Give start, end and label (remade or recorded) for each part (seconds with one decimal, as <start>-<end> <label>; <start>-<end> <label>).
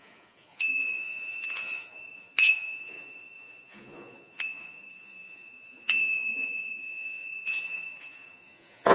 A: 0.0-8.9 remade